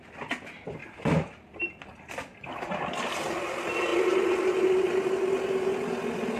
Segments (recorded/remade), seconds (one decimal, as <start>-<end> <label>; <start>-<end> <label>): 0.0-0.8 recorded; 0.8-1.8 remade; 1.8-6.4 recorded